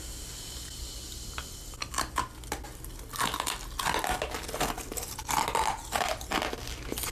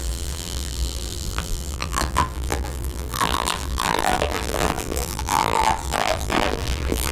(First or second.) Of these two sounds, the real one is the first